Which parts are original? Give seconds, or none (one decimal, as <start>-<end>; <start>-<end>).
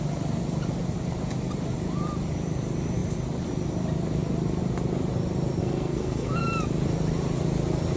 0.0-5.6; 6.4-8.0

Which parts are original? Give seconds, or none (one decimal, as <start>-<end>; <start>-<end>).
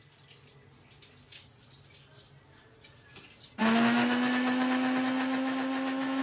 0.0-6.2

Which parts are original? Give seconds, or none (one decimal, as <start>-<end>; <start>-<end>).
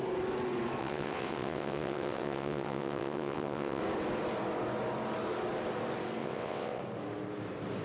0.0-0.8; 3.8-6.2; 6.8-7.8